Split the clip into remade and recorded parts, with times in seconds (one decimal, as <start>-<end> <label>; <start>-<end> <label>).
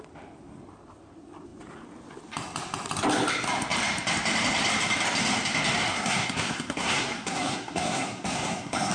0.0-5.9 recorded; 5.9-8.9 remade